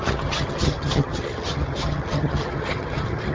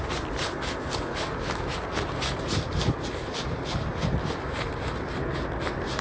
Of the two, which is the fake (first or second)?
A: first